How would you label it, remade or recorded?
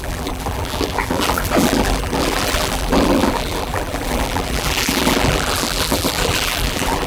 remade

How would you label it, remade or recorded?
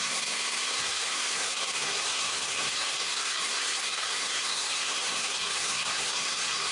remade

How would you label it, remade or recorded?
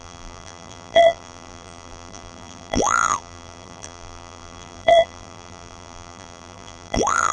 remade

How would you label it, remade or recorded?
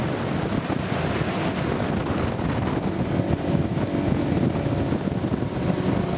recorded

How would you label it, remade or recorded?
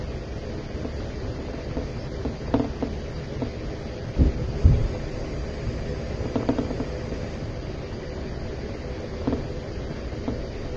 recorded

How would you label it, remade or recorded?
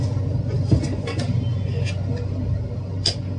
recorded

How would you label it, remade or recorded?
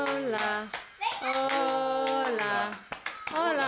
recorded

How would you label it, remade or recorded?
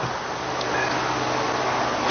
recorded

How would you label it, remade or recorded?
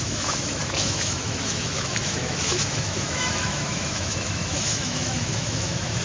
remade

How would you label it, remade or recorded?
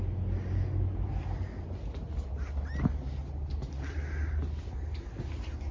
recorded